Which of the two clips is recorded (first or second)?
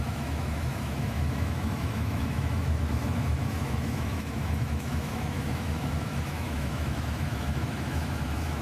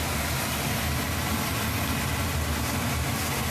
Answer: second